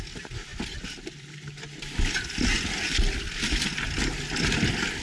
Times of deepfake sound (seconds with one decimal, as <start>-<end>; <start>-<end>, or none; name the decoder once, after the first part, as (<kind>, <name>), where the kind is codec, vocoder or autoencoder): none